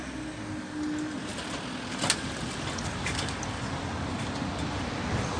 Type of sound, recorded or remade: recorded